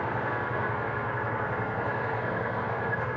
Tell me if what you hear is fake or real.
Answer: fake